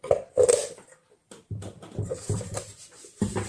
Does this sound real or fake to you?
real